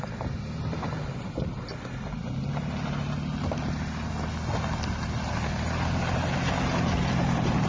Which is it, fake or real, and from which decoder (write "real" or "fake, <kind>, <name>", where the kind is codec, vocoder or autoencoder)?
real